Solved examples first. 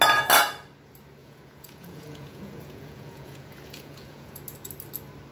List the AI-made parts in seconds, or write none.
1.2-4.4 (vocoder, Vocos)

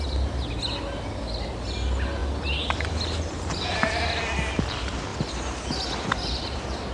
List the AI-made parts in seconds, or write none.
none

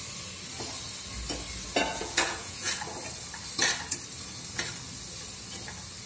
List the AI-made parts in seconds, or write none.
1.9-2.7 (vocoder, Vocos)

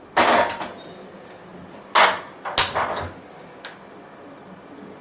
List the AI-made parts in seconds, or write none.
none

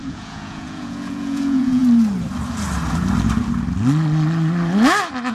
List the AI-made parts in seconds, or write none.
0.0-1.8 (vocoder, Vocos)

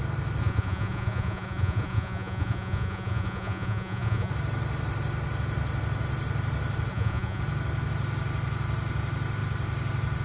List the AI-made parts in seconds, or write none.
0.4-4.3 (vocoder, Vocos); 6.9-7.4